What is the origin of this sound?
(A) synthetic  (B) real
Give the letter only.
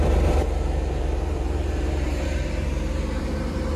A